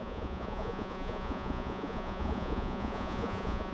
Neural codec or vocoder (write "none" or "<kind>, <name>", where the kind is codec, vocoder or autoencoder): vocoder, Vocos